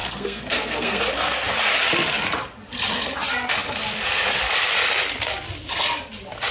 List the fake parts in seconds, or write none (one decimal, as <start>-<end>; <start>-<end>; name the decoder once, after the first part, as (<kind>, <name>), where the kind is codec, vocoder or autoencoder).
0.0-1.0 (codec, SNAC)